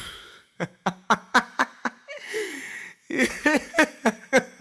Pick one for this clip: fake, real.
fake